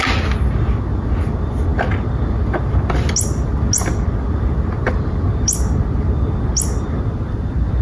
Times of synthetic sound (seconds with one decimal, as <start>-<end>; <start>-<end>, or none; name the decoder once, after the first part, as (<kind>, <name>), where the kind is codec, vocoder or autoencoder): none